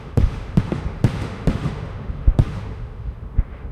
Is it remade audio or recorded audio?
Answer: remade